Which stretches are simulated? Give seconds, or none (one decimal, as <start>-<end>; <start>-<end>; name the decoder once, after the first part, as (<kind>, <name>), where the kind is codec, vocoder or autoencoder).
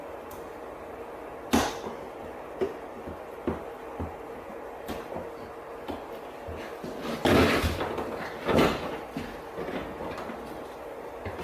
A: none